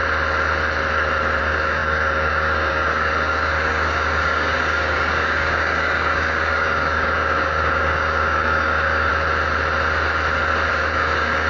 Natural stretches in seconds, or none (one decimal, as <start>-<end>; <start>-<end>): 0.0-1.4; 9.1-10.7